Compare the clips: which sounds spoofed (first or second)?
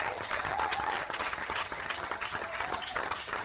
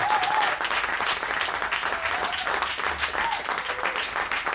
first